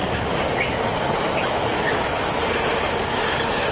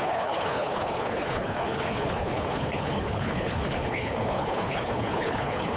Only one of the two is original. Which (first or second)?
first